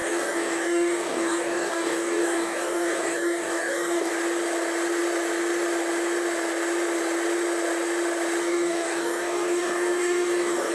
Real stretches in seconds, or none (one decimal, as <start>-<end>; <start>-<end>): 4.1-8.4